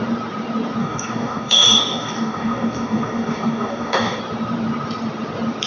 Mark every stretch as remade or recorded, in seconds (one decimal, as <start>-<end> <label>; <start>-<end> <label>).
0.0-0.8 recorded; 0.8-4.2 remade; 4.2-5.7 recorded